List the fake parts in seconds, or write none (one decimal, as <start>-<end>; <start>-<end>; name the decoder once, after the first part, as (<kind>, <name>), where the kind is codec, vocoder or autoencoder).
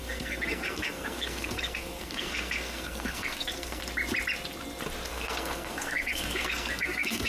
0.0-3.8 (codec, SNAC); 5.1-7.3